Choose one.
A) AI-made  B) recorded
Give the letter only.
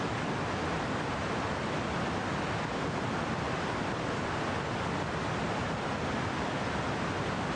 B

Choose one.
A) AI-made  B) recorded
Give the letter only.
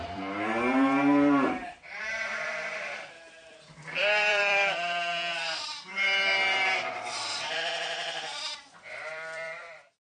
A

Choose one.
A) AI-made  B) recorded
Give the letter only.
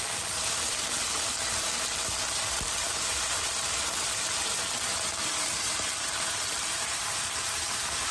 A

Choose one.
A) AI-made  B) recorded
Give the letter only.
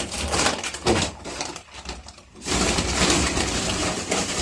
A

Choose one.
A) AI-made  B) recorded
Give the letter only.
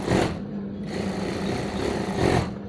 B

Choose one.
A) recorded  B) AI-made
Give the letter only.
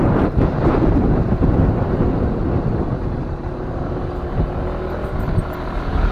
B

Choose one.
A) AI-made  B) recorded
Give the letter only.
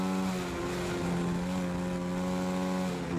B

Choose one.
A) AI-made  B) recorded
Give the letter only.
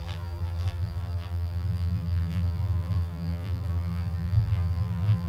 A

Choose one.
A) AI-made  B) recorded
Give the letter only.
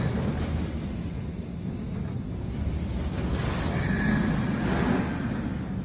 B